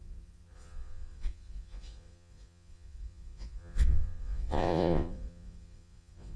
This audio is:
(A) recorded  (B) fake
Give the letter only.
B